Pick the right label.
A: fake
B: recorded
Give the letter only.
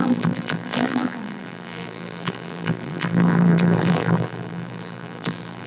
A